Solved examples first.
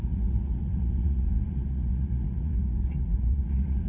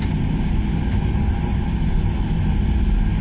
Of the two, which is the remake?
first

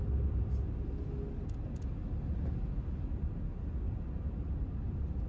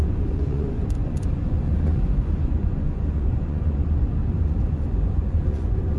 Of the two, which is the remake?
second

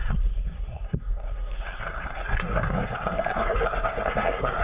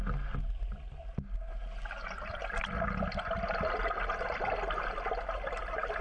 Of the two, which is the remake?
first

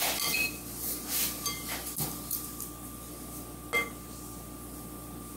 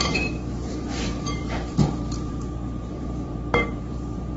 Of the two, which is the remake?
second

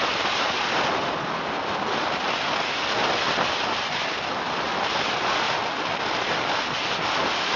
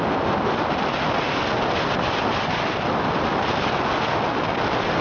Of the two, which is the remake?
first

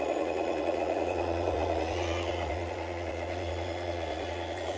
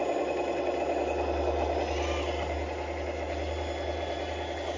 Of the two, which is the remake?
first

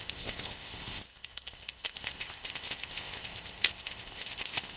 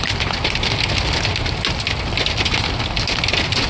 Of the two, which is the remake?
first